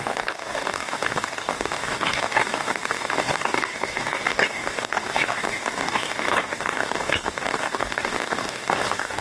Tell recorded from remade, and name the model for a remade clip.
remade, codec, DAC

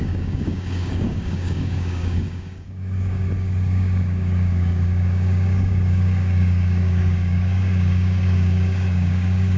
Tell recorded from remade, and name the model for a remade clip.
remade, codec, DAC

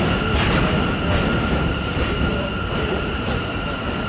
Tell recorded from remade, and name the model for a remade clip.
recorded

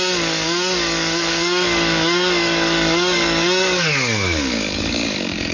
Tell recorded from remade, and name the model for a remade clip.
remade, codec, DAC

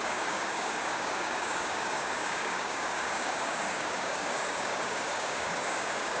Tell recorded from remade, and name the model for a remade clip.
remade, codec, DAC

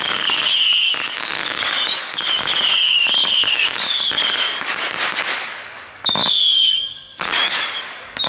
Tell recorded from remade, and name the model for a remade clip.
remade, codec, DAC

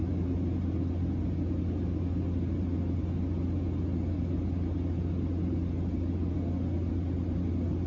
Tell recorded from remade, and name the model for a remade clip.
recorded